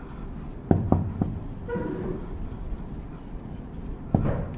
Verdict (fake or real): real